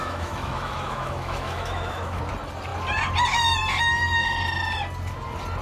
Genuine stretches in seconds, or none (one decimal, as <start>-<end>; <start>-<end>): 2.2-5.6